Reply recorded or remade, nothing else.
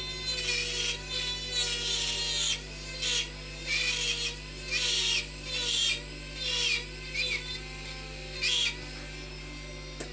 recorded